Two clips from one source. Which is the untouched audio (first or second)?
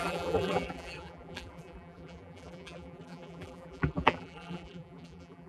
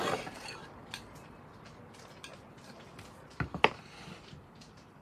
second